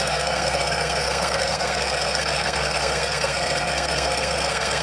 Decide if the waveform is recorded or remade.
remade